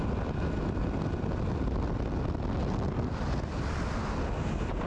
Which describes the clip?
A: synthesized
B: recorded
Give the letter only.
B